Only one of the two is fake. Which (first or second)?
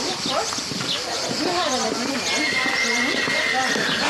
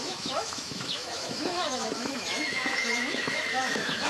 second